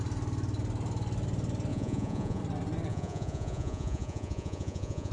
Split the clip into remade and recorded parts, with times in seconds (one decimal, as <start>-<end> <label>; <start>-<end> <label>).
0.0-1.7 recorded; 1.7-2.4 remade; 2.4-2.9 recorded; 2.9-5.1 remade